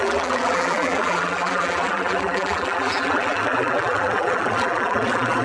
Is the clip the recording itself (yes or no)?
no